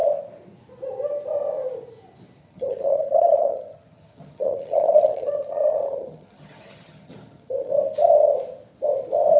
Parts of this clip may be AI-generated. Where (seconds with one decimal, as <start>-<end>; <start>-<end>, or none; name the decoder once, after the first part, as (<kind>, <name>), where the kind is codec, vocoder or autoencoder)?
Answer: 2.4-7.7 (vocoder, HiFi-GAN)